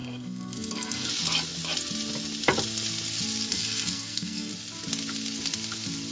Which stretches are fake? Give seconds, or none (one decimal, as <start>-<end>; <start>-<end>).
0.0-1.1; 3.5-4.5